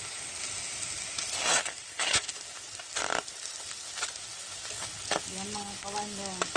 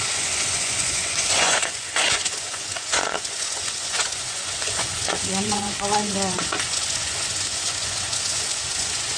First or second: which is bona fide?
first